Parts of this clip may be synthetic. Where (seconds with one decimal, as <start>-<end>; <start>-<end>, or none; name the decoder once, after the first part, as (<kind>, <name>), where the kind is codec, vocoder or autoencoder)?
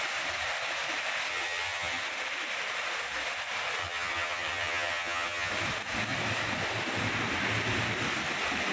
1.3-2.0 (vocoder, HiFi-GAN); 3.8-5.5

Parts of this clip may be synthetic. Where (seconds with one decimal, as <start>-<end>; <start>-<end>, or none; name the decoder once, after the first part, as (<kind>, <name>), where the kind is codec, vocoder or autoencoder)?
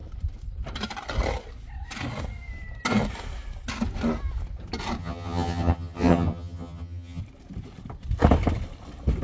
5.0-7.2 (vocoder, HiFi-GAN)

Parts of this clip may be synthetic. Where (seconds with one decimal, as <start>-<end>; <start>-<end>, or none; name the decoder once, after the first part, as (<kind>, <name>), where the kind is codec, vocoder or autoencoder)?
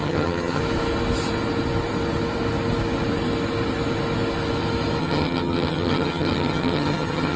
0.0-0.6 (vocoder, HiFi-GAN); 5.0-7.4